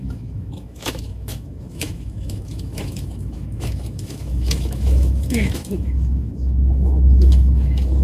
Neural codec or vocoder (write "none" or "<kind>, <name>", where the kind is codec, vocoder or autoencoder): autoencoder, DAC-VAE